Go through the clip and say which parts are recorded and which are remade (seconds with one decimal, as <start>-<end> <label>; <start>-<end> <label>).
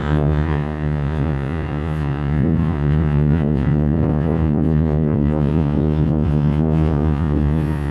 0.0-7.9 remade